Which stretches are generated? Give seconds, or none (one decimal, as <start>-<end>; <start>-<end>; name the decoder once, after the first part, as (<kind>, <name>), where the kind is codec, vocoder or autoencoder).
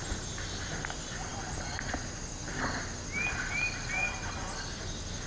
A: none